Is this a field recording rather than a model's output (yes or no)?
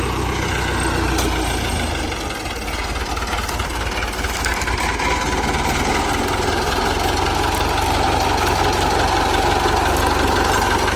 yes